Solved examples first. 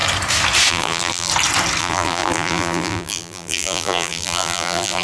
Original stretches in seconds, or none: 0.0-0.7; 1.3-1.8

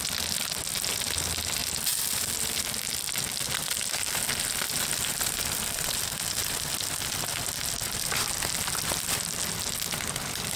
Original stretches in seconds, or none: 0.0-10.6